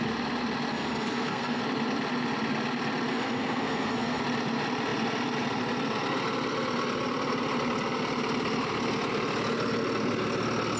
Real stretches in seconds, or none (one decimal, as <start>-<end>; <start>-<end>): 0.0-0.7; 1.6-3.1; 4.2-10.8

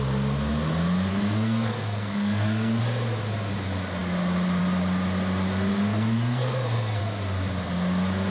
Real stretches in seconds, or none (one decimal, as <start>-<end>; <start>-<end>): 0.0-1.1; 2.8-5.7; 7.0-8.3

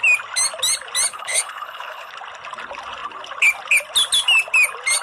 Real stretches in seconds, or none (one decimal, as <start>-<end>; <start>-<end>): 0.0-1.1; 2.1-5.0

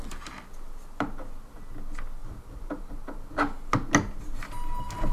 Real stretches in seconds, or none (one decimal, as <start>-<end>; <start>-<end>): 0.0-2.2; 3.3-5.1